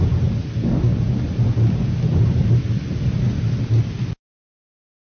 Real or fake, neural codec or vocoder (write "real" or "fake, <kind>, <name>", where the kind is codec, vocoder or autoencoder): real